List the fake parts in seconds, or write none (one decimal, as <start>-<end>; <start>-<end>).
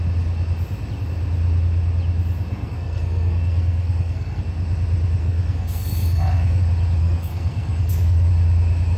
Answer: 2.5-4.4; 5.2-6.6; 7.0-8.3